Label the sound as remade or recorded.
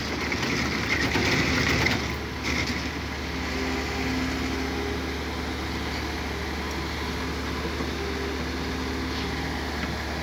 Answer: recorded